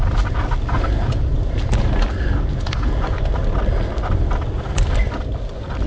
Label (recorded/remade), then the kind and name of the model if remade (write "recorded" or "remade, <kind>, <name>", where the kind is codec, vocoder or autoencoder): recorded